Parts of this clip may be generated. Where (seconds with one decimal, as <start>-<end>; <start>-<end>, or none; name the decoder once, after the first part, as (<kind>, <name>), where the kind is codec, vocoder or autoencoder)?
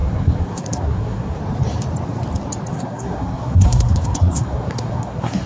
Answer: 0.0-1.4 (codec, SNAC); 2.7-5.5